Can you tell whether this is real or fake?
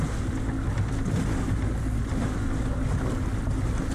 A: real